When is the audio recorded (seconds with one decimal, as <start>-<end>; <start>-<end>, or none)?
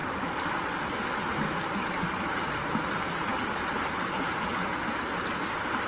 0.0-5.9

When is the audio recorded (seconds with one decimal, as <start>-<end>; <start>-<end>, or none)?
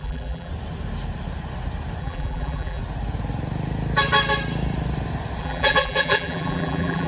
0.5-2.0; 2.8-5.4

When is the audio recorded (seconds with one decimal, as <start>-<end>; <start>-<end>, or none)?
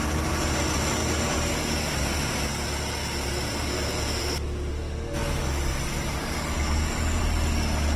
0.0-1.0; 1.5-2.0; 2.5-3.0; 4.2-8.0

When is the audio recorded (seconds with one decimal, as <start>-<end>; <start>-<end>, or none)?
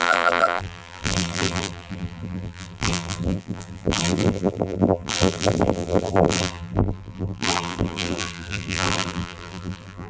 none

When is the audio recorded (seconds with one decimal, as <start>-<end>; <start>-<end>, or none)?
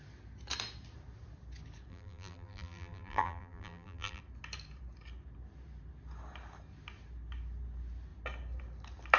0.0-1.9; 4.2-9.2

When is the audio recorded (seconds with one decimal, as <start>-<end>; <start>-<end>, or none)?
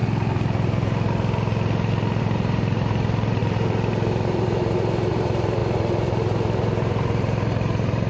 0.0-2.2